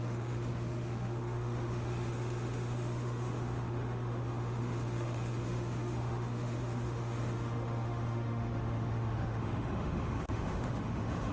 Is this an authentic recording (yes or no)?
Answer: no